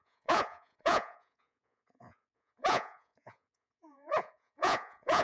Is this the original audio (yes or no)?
no